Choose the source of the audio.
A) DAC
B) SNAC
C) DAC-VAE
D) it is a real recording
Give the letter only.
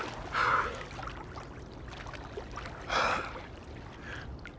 D